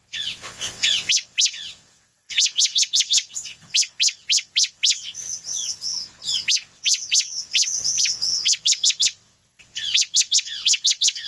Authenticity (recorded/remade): remade